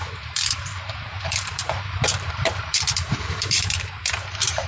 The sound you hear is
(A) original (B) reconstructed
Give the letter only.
B